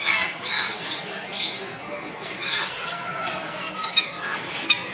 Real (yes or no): no